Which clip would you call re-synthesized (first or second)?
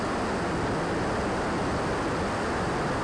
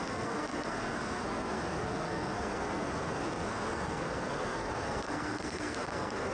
second